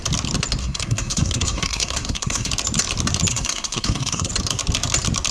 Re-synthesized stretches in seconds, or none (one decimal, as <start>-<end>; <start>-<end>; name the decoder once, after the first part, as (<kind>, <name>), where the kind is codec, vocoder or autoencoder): 0.6-2.5 (codec, SNAC); 3.3-4.3